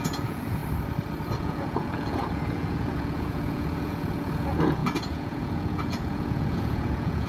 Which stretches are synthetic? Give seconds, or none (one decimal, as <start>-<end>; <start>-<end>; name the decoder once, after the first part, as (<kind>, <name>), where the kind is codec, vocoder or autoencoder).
0.0-0.6 (vocoder, Vocos); 1.4-7.3